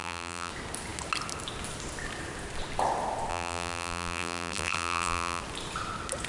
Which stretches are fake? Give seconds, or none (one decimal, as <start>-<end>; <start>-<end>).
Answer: 0.0-0.5; 3.3-5.4